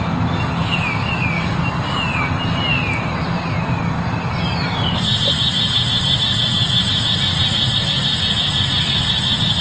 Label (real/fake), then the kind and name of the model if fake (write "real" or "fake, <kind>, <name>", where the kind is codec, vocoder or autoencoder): real